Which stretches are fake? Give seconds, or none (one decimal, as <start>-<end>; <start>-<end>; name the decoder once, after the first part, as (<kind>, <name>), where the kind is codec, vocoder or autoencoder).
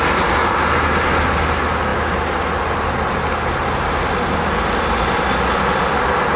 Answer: none